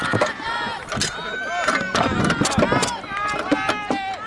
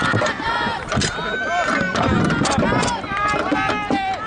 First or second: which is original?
first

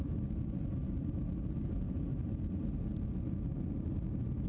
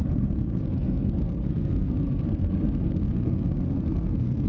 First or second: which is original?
first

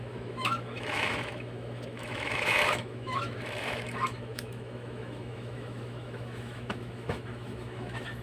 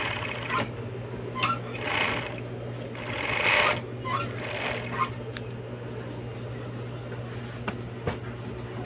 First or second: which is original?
second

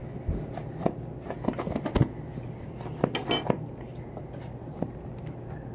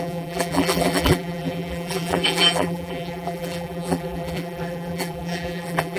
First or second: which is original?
first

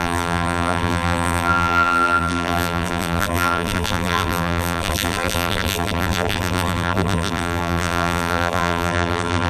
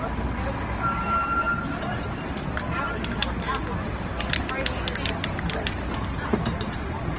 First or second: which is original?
second